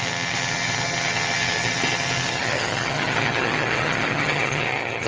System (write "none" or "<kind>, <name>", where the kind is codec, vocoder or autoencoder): vocoder, HiFi-GAN